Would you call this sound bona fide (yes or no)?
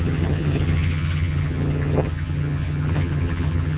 no